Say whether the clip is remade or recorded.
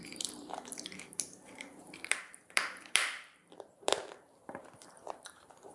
remade